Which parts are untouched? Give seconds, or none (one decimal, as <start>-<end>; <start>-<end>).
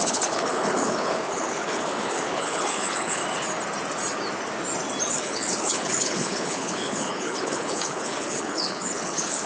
3.2-5.1